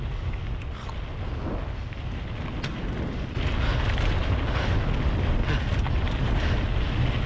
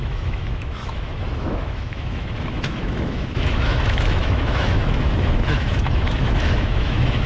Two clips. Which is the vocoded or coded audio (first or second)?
second